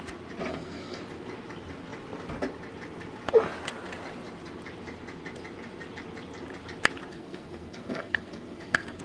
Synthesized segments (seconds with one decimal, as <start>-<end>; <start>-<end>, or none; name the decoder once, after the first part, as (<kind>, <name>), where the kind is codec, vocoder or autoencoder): 0.5-1.0 (codec, SNAC); 7.1-9.0